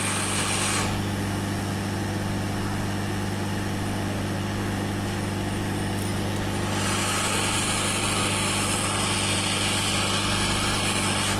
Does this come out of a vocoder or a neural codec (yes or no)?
no